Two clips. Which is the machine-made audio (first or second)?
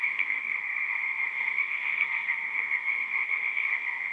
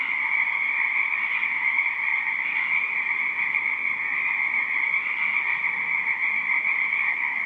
first